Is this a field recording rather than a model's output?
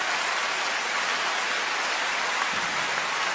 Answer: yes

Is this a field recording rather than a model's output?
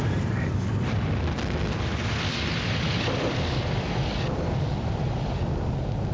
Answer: yes